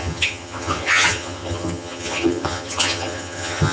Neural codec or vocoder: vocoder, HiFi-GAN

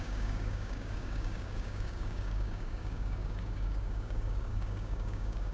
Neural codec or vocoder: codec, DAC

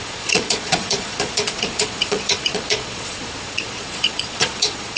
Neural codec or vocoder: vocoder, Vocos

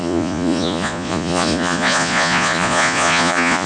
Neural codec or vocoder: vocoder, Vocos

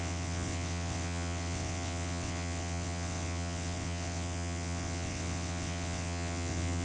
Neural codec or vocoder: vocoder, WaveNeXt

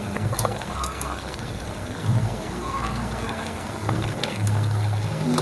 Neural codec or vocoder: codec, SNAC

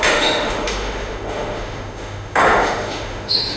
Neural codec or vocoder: autoencoder, DAC-VAE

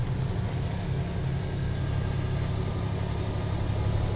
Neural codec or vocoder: none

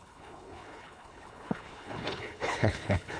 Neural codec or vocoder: codec, HILCodec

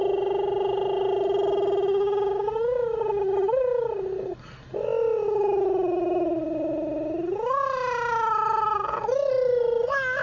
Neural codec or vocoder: none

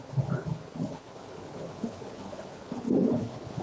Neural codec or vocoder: codec, HILCodec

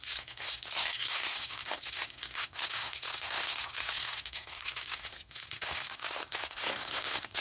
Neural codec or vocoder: codec, SNAC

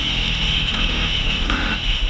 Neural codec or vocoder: autoencoder, DAC-VAE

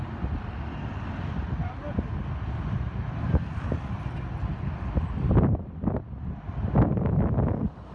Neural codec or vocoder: none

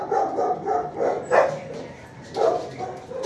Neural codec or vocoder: none